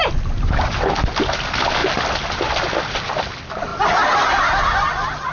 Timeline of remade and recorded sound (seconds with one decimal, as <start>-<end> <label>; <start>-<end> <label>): 0.0-5.3 recorded